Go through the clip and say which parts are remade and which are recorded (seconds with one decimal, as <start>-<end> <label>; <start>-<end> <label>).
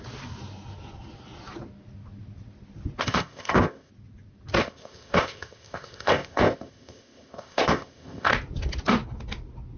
0.0-3.0 recorded; 3.0-3.9 remade; 3.9-4.6 recorded; 4.6-8.3 remade; 8.3-9.8 recorded